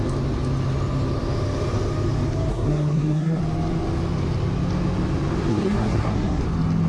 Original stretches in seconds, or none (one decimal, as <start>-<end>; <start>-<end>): 0.0-2.5; 3.4-5.5; 6.4-6.9